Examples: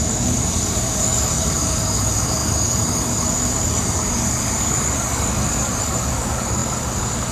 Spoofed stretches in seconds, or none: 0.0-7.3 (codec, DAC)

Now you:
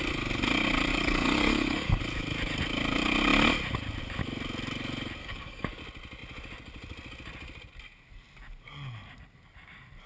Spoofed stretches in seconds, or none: 0.9-2.0 (codec, DAC); 5.2-5.8

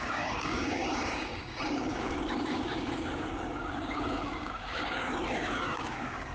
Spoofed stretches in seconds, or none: 0.0-6.3 (codec, DAC)

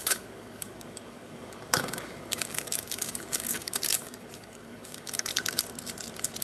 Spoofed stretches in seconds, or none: 0.0-5.3 (codec, DAC)

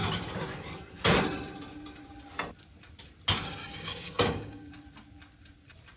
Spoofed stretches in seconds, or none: 3.6-4.7 (codec, DAC)

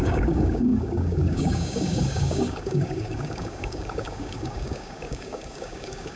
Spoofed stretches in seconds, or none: 0.0-6.2 (codec, DAC)